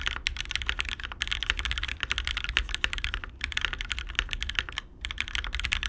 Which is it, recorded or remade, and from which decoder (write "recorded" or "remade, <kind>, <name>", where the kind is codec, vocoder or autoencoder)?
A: recorded